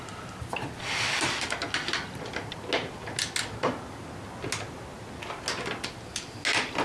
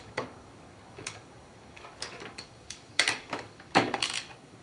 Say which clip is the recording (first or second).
first